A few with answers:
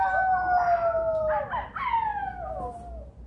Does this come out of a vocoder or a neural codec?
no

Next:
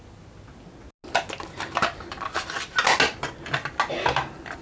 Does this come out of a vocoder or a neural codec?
no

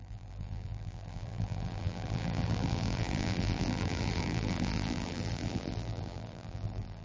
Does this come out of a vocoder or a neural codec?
yes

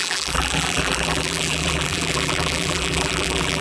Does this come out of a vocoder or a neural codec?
yes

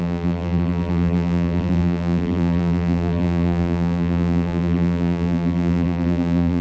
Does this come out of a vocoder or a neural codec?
yes